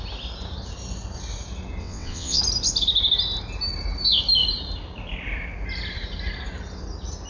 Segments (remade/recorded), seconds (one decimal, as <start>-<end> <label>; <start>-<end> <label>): 0.0-1.8 recorded; 1.8-2.4 remade; 2.4-7.3 recorded